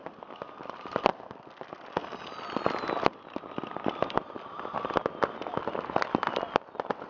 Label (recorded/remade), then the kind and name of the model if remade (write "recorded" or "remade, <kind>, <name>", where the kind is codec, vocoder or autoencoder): recorded